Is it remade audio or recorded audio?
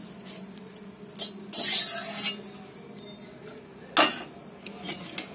recorded